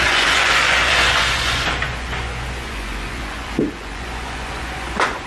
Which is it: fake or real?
fake